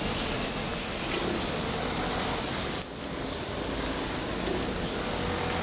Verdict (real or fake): real